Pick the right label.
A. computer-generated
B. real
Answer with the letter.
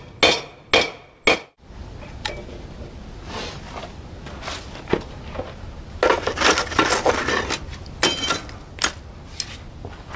B